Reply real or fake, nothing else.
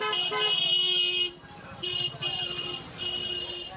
real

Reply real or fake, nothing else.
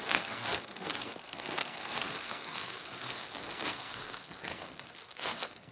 fake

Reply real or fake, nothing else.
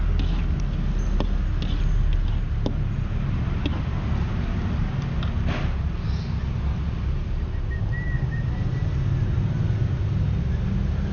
real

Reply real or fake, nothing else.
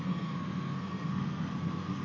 fake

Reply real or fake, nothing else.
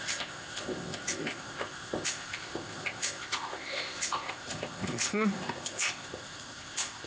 fake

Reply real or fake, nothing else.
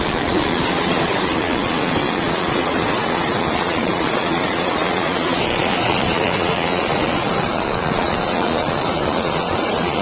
fake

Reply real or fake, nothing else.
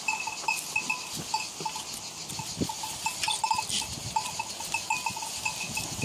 real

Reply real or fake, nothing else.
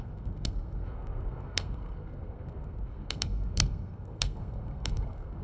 fake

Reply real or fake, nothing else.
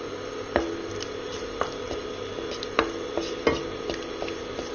real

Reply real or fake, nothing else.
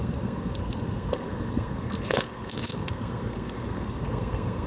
fake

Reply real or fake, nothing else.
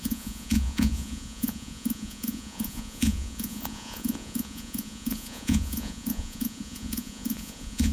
fake